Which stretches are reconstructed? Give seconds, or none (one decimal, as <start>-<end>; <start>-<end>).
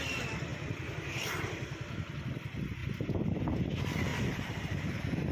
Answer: 2.8-3.6; 4.1-5.3